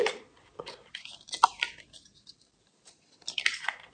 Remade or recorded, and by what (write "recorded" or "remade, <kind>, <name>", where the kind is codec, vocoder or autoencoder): recorded